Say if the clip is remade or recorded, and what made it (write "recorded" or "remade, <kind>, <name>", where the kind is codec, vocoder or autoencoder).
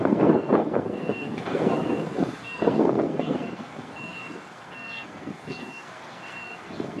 remade, codec, SNAC